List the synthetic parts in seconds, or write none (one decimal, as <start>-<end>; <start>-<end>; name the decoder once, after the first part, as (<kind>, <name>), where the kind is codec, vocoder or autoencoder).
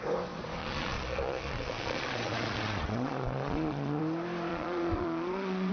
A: 0.6-4.0 (vocoder, Vocos); 4.5-5.7